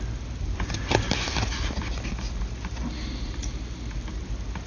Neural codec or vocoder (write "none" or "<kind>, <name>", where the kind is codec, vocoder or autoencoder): none